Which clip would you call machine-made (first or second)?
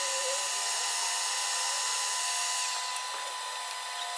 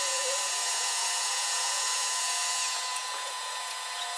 second